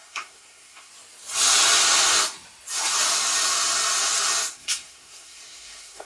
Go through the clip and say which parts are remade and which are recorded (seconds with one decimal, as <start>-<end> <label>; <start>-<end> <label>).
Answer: 0.0-0.9 remade; 0.9-4.5 recorded; 4.5-6.0 remade